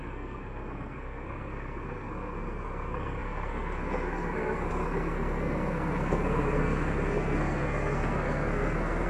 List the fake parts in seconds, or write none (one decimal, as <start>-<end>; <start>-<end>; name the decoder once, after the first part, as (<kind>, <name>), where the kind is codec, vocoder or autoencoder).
0.0-9.1 (codec, SNAC)